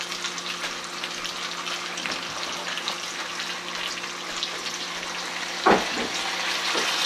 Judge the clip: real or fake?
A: real